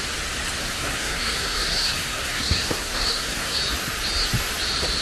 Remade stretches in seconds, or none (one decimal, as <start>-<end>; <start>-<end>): 0.6-3.6